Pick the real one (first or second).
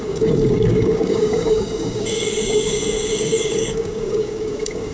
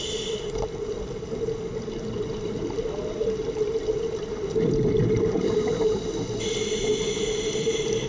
second